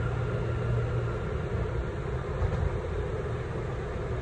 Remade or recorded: recorded